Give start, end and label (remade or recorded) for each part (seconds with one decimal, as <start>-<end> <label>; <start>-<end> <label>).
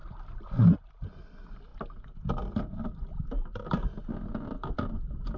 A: 0.0-5.4 recorded